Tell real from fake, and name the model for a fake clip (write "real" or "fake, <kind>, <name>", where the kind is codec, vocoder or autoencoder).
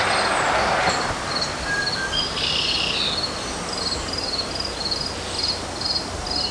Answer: real